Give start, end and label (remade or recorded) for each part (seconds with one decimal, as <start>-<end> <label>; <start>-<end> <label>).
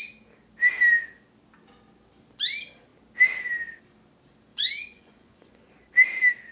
0.0-4.5 recorded; 4.5-5.6 remade; 5.6-6.5 recorded